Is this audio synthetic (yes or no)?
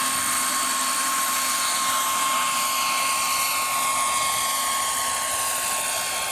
no